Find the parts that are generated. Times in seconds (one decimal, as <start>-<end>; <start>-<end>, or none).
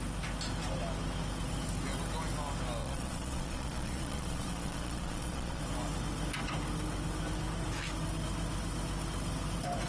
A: 2.8-5.6